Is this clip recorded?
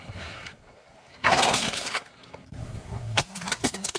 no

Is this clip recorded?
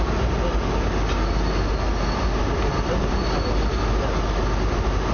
yes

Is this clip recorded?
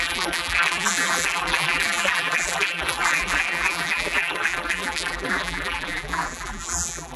no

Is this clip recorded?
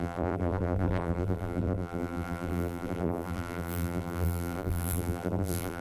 no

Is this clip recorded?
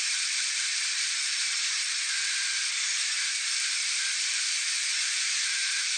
no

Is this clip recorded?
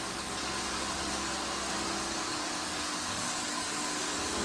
no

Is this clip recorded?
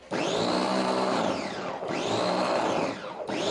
yes